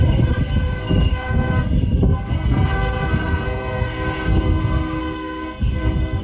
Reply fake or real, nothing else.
fake